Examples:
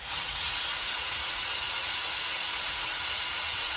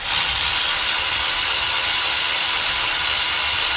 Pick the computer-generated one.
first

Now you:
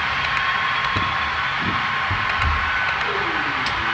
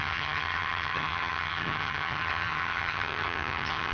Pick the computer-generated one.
second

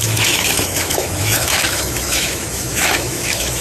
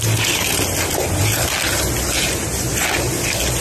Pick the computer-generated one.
first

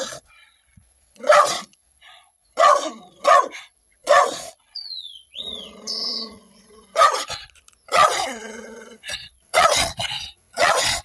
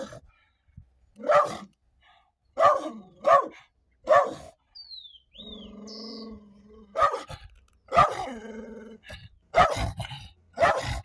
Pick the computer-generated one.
first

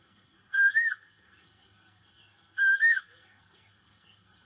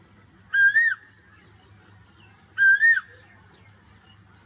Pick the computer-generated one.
first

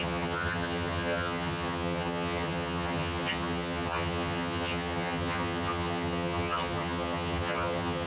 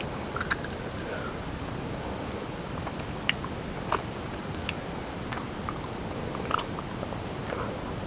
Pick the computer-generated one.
first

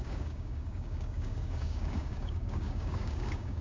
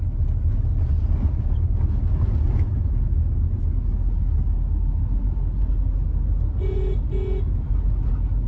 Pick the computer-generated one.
first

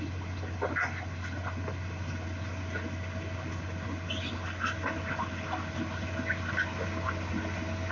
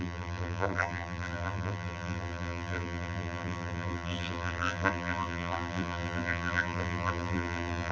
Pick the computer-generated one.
second